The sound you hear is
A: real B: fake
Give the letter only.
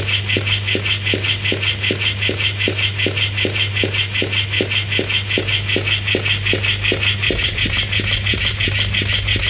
A